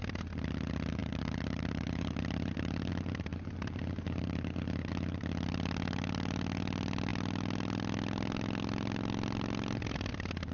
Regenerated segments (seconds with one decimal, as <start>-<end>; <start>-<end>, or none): 1.0-2.9; 3.3-4.9